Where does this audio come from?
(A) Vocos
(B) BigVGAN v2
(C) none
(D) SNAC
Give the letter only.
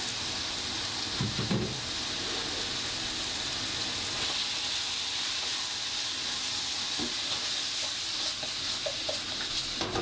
C